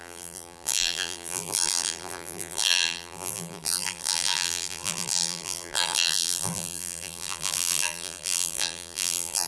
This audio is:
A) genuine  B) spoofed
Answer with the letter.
B